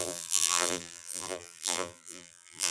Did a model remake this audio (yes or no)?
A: yes